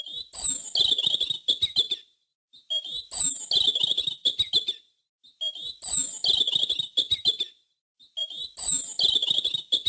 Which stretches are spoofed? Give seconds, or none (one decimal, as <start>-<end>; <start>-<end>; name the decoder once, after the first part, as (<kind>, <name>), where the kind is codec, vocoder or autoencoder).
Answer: none